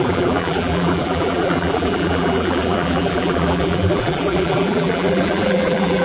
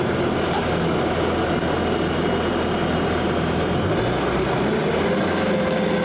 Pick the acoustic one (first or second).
second